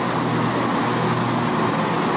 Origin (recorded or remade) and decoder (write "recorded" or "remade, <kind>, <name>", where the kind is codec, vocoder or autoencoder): recorded